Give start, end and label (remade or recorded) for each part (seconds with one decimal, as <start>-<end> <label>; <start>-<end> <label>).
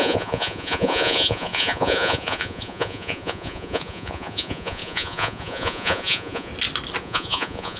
0.0-6.5 remade; 6.5-7.0 recorded; 7.0-7.8 remade